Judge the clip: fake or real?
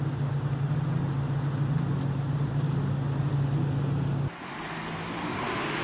real